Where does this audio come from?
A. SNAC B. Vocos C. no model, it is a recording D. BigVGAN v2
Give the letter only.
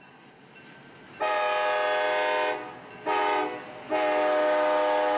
C